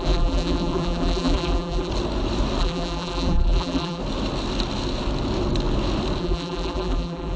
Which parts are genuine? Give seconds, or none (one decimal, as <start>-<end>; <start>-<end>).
1.9-2.6; 4.0-6.2